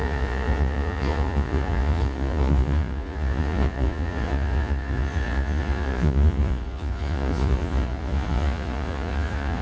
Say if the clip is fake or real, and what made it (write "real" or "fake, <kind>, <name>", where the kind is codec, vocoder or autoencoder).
fake, vocoder, Vocos